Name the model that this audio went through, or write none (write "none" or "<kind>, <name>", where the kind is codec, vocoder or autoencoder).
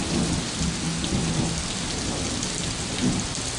none